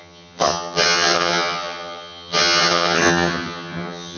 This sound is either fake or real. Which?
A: fake